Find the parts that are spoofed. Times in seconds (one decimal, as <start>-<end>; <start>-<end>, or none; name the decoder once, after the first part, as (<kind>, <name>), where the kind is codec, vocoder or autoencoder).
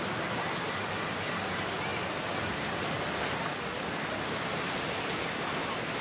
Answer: none